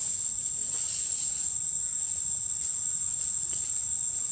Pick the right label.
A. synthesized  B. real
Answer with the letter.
B